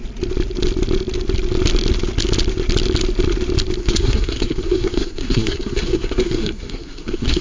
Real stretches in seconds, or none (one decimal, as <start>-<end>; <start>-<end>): 0.0-3.8